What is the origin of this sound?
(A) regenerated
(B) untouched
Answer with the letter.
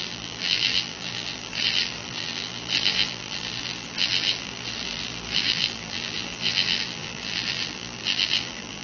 A